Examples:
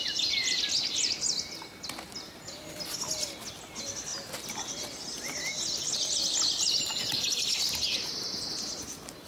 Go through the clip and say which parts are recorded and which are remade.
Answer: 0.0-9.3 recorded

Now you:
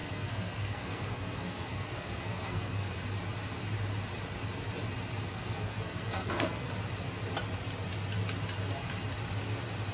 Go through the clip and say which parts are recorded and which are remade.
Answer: 0.0-2.9 remade; 2.9-5.3 recorded; 5.3-6.7 remade; 6.7-9.9 recorded

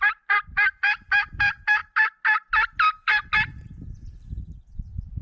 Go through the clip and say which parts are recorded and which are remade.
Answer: 0.0-5.2 recorded

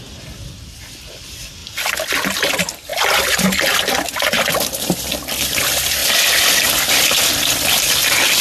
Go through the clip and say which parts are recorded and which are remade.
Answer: 0.0-8.4 recorded

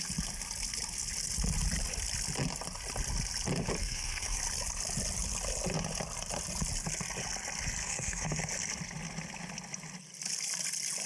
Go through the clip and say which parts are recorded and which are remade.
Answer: 0.0-3.8 recorded; 3.8-4.4 remade; 4.4-7.8 recorded; 7.8-8.4 remade; 8.4-11.1 recorded

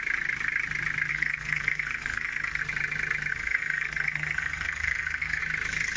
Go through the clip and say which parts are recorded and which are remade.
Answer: 0.0-1.1 recorded; 1.1-2.6 remade; 2.6-3.3 recorded; 3.3-5.4 remade; 5.4-6.0 recorded

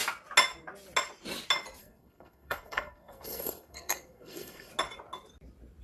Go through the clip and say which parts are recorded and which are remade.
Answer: 0.0-1.8 recorded; 1.8-4.7 remade; 4.7-5.8 recorded